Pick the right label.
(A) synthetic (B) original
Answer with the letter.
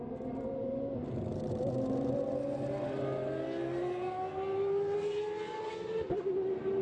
B